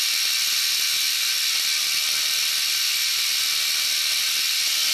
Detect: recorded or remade recorded